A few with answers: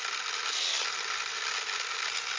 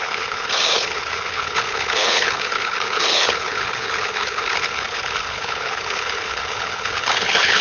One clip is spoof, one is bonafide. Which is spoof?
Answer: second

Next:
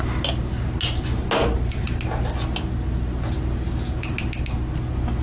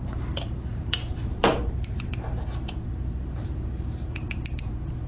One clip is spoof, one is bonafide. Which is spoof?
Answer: second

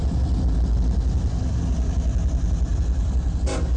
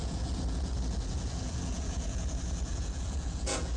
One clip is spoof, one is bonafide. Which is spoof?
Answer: second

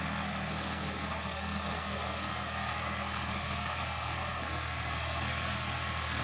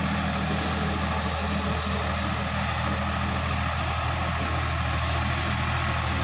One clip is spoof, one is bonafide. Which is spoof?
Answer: first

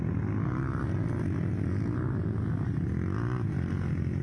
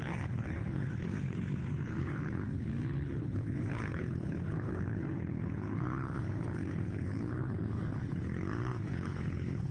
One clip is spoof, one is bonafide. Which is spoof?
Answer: second